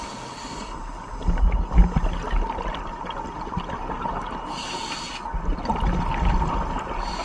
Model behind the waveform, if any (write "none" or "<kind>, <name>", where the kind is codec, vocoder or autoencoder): none